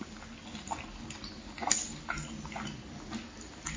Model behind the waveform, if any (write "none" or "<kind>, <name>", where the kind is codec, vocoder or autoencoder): none